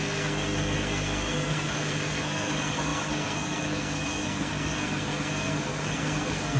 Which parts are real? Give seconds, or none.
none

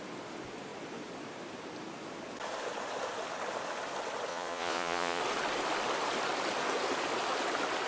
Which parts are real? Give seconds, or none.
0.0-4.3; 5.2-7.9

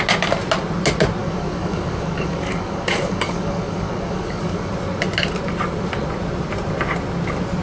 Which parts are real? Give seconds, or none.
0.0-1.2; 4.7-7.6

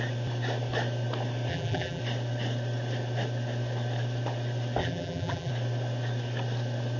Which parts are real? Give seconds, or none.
0.0-1.5; 2.0-4.8; 5.5-7.0

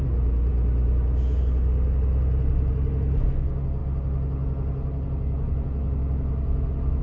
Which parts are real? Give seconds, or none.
0.0-7.0

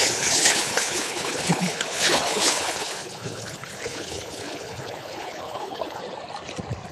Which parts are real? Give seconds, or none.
6.0-6.9

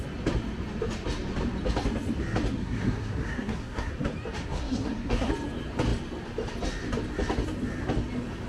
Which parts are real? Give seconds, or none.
0.0-2.6; 3.9-4.4; 5.3-8.5